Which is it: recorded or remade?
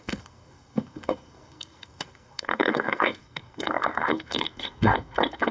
remade